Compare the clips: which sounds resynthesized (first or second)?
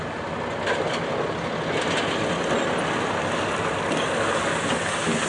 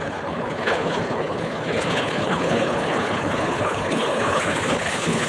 second